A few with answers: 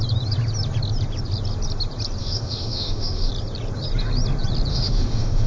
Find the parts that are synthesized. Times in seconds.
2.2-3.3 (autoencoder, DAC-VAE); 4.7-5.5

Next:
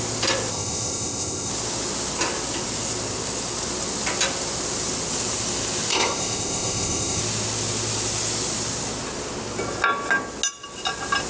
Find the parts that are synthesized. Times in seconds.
0.5-1.5 (codec, ZipCodec); 5.9-7.2